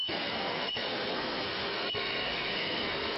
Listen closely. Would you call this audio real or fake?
fake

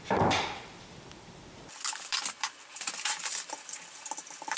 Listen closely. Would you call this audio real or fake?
real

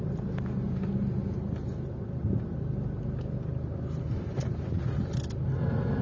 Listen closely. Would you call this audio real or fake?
real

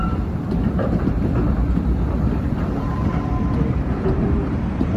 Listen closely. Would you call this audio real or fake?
fake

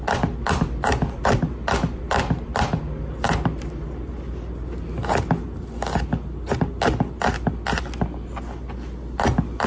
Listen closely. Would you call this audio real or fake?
real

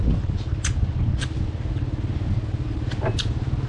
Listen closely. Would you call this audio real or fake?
real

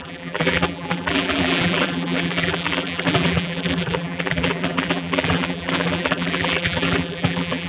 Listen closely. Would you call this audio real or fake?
fake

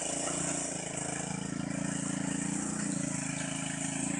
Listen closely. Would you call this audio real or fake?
real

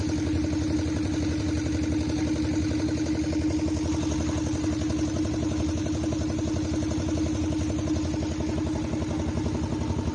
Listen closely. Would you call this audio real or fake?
real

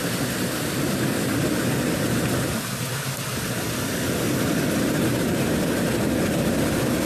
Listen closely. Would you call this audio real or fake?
real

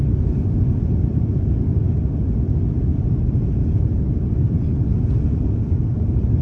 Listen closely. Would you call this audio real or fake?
real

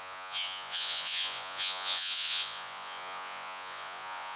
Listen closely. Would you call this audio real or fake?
fake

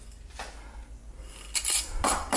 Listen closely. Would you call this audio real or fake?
real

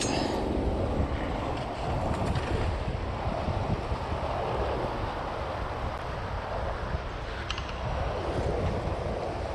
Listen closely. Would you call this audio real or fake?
real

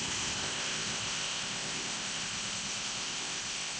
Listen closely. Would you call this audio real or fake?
fake